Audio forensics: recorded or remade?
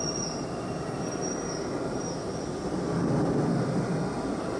recorded